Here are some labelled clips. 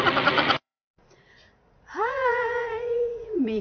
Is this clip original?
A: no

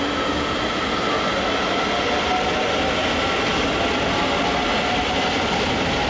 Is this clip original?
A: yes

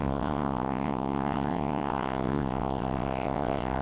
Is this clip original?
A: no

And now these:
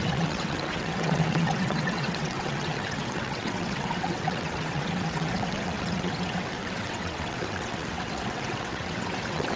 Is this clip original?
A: no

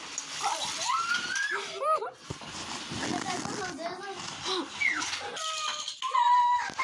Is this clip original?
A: yes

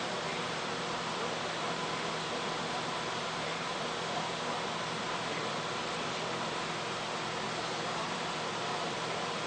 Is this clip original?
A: no